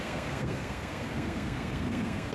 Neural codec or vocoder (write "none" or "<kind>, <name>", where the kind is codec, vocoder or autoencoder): codec, SNAC